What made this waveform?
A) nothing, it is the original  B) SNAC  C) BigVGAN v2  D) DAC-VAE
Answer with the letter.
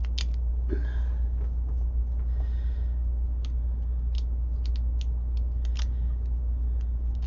A